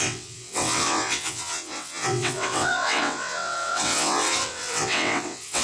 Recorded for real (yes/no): no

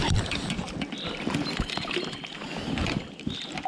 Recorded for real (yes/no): yes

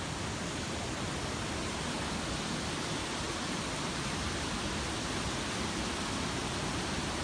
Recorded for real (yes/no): yes